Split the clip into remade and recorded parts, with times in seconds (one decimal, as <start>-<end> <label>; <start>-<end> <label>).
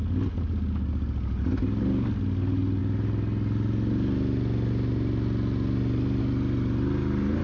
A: 0.0-7.4 recorded